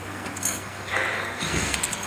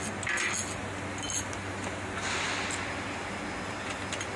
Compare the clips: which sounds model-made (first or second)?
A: first